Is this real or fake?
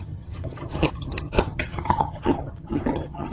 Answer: fake